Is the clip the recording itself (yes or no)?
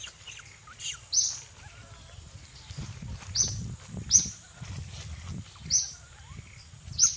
yes